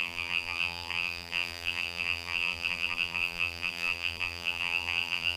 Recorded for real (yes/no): no